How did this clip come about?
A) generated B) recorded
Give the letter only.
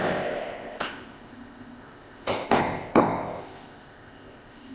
A